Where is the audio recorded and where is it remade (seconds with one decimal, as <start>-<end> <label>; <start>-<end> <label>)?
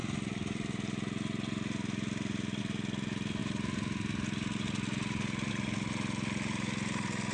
0.0-7.3 recorded